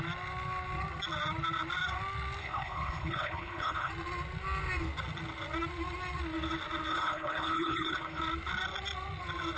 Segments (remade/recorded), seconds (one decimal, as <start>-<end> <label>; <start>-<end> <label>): 0.0-2.4 recorded; 2.4-3.9 remade; 3.9-6.9 recorded; 6.9-8.2 remade; 8.2-9.6 recorded